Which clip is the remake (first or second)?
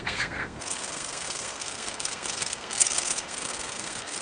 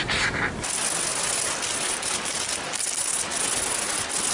first